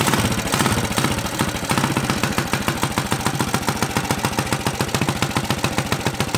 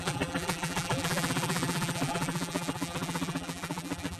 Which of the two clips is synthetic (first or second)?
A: second